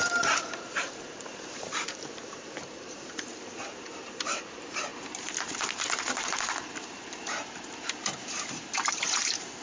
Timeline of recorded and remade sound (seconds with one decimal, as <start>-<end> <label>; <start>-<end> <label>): 0.0-4.9 remade; 4.9-6.2 recorded; 6.2-9.6 remade